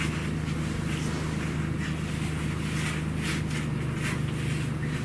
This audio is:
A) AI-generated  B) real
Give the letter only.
B